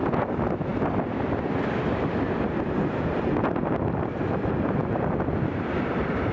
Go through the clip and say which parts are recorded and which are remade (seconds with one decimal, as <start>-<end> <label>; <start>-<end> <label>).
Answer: 0.0-6.3 recorded